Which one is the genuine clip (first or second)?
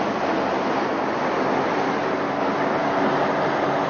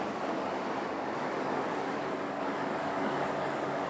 first